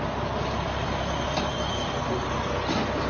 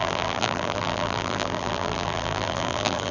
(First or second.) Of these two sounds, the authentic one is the first